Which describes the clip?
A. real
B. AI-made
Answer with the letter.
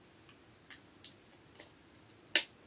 A